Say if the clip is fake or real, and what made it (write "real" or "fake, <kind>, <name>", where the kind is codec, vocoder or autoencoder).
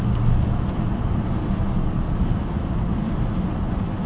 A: real